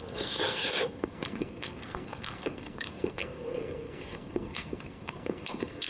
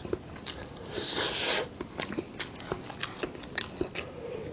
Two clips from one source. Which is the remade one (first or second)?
first